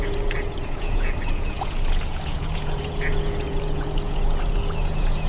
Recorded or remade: remade